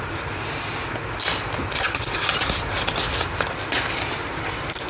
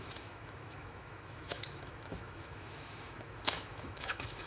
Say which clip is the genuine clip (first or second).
first